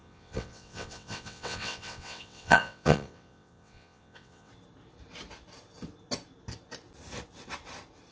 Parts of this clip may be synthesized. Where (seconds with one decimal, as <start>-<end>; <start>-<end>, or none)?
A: 0.0-4.5

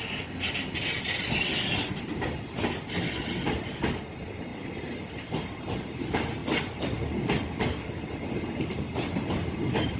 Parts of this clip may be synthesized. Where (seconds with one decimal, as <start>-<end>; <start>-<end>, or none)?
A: none

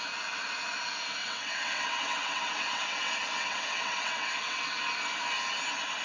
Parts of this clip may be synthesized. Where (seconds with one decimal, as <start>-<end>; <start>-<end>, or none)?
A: 1.2-4.8

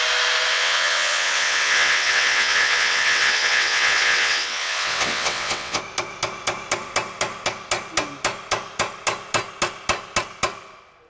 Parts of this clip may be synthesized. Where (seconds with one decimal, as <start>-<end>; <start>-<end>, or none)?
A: 0.5-5.8

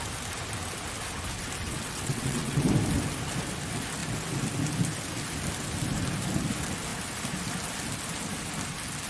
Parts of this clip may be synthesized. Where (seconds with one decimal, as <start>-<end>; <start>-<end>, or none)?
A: 1.6-2.6

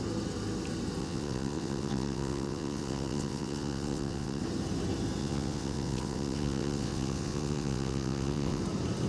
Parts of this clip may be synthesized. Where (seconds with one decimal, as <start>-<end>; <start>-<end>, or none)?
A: 1.0-4.4; 5.2-8.6

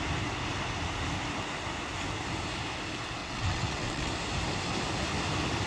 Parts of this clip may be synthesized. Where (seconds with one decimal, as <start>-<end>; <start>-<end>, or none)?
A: 3.2-4.1